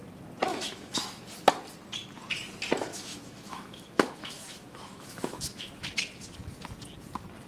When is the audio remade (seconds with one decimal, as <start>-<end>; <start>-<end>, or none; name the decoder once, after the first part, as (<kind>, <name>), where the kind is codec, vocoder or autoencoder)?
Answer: 0.5-1.2 (autoencoder, DAC-VAE); 2.9-5.7